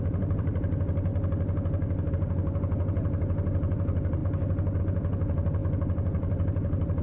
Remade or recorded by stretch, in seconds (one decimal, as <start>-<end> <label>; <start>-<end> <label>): 0.0-1.1 remade; 1.1-2.1 recorded; 2.1-7.0 remade

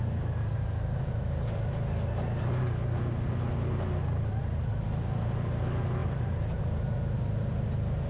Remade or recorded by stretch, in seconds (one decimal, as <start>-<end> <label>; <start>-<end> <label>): 0.0-6.0 recorded; 6.0-6.6 remade; 6.6-8.1 recorded

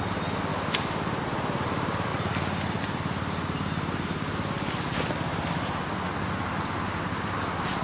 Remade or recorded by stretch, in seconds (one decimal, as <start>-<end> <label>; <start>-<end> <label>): 0.0-7.8 recorded

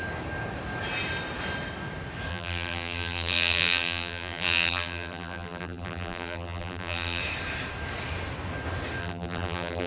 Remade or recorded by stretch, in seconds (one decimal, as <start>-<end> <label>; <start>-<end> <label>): 0.0-2.3 recorded; 2.3-7.2 remade; 7.2-9.0 recorded; 9.0-9.9 remade